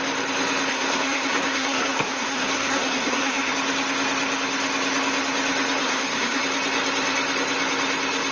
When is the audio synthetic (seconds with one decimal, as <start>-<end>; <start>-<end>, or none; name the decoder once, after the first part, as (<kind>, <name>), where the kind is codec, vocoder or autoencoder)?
0.7-3.5 (codec, SNAC); 5.8-6.4

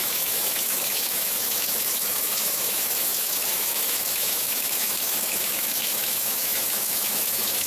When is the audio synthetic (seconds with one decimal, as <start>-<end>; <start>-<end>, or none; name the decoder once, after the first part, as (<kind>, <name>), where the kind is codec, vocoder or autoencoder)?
0.0-7.7 (autoencoder, DAC-VAE)

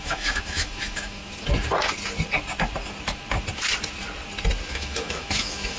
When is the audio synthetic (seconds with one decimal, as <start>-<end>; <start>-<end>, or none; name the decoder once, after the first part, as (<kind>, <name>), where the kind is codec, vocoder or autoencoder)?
0.0-1.2 (autoencoder, DAC-VAE); 4.7-5.8

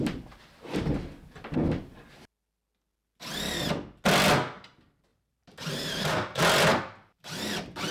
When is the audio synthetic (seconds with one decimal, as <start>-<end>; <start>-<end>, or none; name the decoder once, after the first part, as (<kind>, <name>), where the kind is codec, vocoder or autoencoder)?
5.1-6.4 (vocoder, BigVGAN v2)

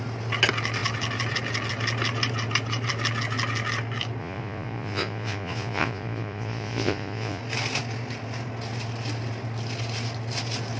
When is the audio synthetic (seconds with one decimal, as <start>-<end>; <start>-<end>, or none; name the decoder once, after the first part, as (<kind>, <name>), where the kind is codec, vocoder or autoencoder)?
4.2-7.4 (vocoder, Vocos)

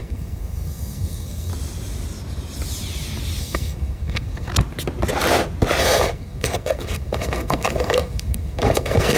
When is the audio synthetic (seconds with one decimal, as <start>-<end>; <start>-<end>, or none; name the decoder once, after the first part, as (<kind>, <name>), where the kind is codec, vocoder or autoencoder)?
0.0-1.5 (codec, SNAC); 3.4-4.5; 5.8-9.2

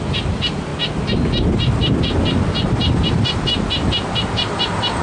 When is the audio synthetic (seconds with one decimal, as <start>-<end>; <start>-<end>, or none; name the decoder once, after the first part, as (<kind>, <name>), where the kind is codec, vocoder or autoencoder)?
0.0-0.7 (vocoder, BigVGAN v2); 3.1-3.5; 4.3-5.0